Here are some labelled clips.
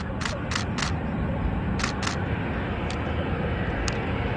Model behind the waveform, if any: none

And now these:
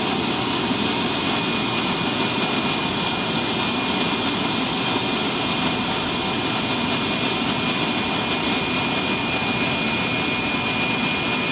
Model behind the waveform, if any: none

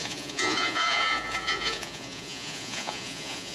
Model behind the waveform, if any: vocoder, Vocos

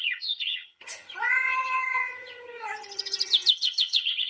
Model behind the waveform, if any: vocoder, HiFi-GAN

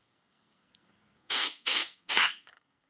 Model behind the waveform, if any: codec, SNAC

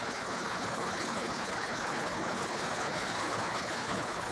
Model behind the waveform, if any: codec, HILCodec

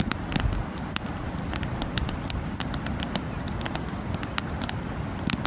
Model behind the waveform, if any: none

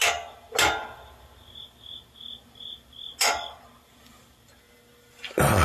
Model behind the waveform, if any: none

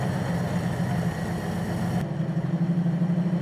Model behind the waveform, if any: none